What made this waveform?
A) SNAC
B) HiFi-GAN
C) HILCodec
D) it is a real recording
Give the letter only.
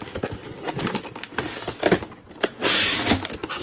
D